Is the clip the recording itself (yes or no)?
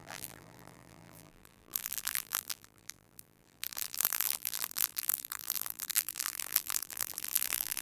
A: no